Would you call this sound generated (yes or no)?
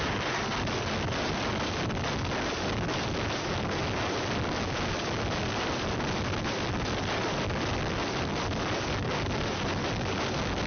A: no